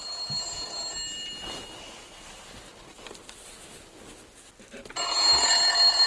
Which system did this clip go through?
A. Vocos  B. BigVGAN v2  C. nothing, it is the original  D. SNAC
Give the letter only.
C